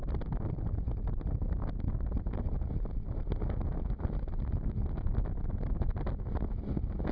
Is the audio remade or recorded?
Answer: recorded